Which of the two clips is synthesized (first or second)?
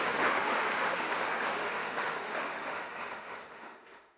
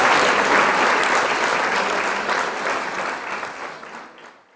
first